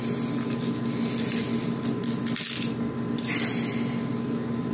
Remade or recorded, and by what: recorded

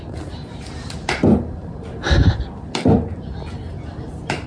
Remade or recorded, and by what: recorded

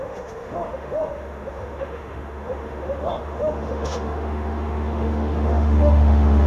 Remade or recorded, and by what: remade, autoencoder, DAC-VAE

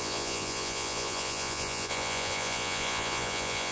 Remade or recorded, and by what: remade, vocoder, Vocos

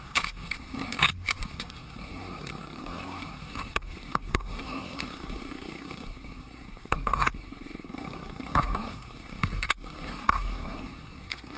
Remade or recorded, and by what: remade, codec, SNAC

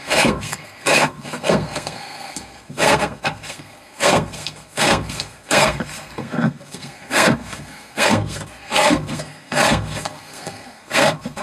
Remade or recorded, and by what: remade, codec, SNAC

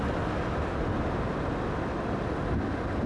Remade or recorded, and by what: recorded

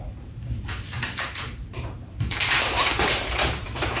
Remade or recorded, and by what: remade, vocoder, BigVGAN v2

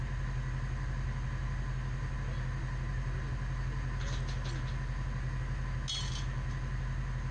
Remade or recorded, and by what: recorded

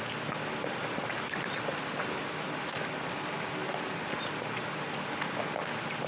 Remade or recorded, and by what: recorded